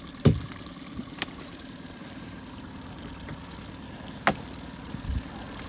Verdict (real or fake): real